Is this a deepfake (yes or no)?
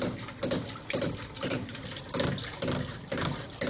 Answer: no